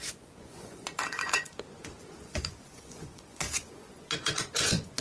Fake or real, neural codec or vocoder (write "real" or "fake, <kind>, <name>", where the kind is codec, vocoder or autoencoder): fake, vocoder, Vocos